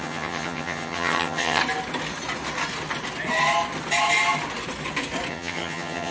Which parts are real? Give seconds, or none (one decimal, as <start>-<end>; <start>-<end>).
1.6-5.3